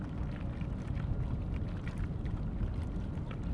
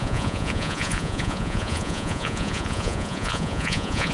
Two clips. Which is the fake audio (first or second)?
second